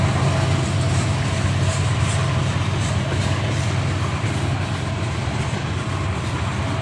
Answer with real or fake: real